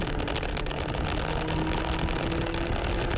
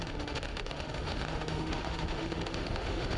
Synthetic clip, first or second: second